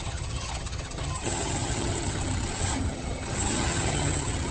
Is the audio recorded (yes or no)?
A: no